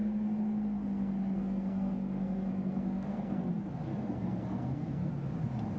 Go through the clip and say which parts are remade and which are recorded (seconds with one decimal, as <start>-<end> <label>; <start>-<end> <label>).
0.0-3.5 remade; 3.5-3.9 recorded; 3.9-5.1 remade; 5.1-5.8 recorded

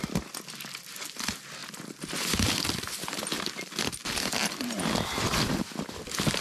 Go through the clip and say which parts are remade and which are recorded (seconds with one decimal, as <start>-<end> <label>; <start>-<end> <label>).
0.0-6.4 recorded

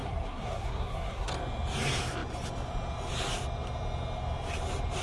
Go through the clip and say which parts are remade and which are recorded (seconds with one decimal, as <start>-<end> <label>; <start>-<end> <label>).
0.0-1.3 remade; 1.3-5.0 recorded